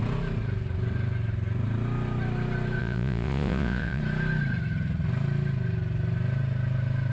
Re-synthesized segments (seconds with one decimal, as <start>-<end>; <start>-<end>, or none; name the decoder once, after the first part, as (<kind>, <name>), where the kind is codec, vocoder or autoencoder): 2.8-4.0 (vocoder, Vocos)